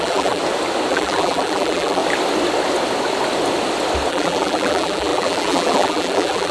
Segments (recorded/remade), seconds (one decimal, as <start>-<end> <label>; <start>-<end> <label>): 0.0-0.4 remade; 0.4-0.9 recorded; 0.9-2.0 remade; 2.0-4.1 recorded; 4.1-6.5 remade